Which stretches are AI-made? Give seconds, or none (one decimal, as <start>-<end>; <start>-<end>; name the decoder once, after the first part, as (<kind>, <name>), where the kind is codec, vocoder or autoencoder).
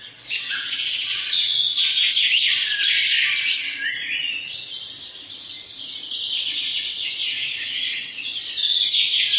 0.0-1.6 (vocoder, WaveNeXt); 6.3-8.4